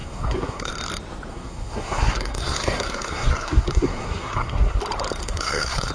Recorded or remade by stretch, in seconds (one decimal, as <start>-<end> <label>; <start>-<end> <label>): 0.0-0.7 remade; 0.7-1.3 recorded; 1.3-4.8 remade; 4.8-5.2 recorded; 5.2-5.9 remade